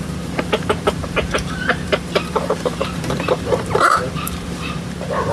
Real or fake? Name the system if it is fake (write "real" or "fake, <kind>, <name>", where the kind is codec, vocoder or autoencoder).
fake, vocoder, BigVGAN v2